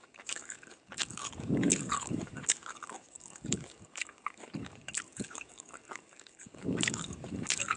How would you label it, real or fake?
fake